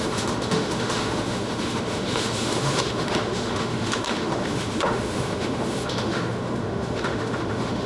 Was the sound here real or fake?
fake